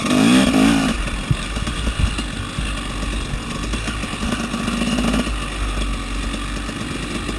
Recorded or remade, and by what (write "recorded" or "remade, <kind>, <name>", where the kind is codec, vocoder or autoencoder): recorded